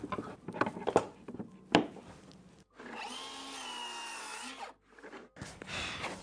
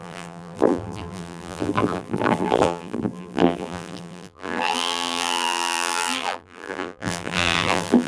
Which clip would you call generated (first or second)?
second